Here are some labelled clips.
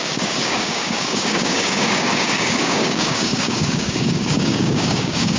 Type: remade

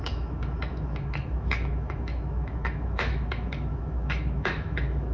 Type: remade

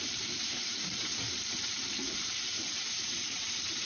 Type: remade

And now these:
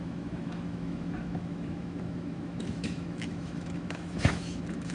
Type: remade